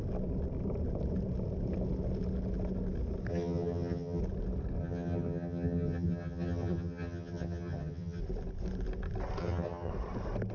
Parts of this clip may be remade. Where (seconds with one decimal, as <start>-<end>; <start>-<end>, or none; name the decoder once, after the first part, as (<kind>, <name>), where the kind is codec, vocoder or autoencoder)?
3.3-4.2 (vocoder, HiFi-GAN); 4.8-8.2; 9.4-9.9